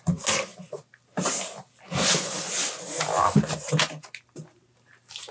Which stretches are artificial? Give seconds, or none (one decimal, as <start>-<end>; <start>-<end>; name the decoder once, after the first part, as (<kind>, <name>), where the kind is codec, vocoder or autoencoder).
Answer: none